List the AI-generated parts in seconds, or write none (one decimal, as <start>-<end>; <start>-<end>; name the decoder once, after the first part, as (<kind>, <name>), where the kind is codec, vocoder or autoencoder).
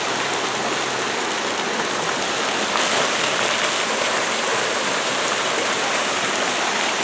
none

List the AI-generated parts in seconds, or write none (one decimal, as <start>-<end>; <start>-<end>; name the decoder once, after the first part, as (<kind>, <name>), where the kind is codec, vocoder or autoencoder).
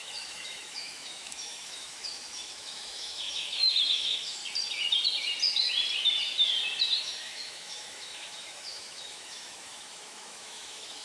0.0-4.4 (autoencoder, DAC-VAE); 7.0-11.0